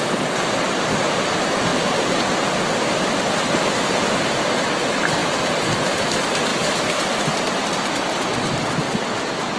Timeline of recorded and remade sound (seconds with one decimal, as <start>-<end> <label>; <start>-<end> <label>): 0.0-9.6 recorded